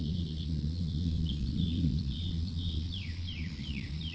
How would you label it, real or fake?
fake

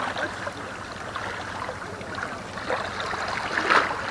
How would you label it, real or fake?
real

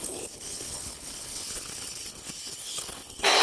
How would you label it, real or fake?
fake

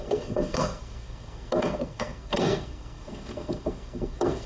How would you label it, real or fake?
fake